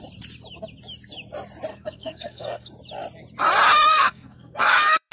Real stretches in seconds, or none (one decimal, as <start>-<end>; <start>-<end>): 0.0-1.7; 2.7-3.9